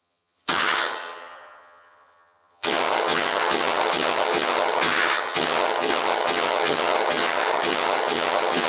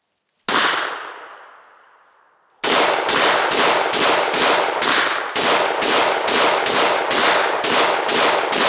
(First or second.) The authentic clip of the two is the second